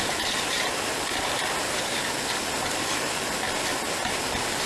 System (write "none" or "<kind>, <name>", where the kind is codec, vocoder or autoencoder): none